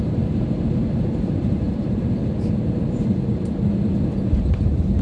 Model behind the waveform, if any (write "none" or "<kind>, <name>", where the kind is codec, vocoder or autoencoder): vocoder, BigVGAN v2